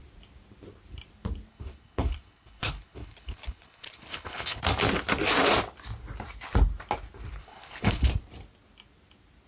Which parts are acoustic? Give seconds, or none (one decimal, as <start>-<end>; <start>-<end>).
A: 0.0-1.5; 4.6-7.4; 8.1-9.5